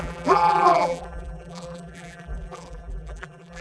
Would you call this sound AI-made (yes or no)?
yes